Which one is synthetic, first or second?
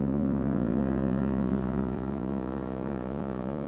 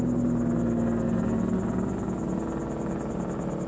first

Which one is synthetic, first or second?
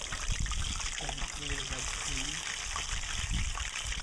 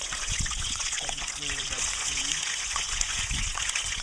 second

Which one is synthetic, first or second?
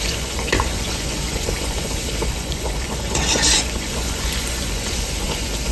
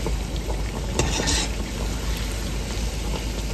first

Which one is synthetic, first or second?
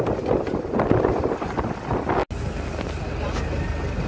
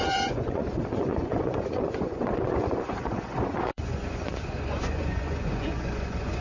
second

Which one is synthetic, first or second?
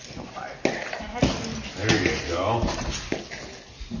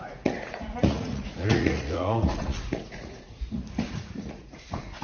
second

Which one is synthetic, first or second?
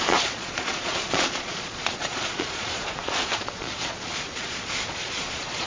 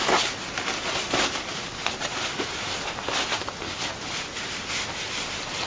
first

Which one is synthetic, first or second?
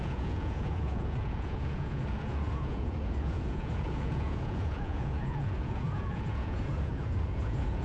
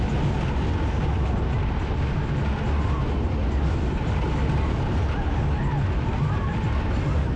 first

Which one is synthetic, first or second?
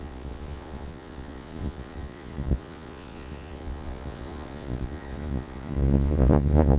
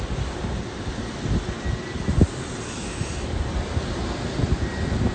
first